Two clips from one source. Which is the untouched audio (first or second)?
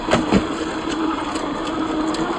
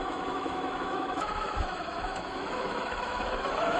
first